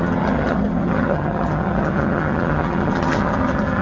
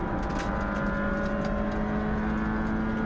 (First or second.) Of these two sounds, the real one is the second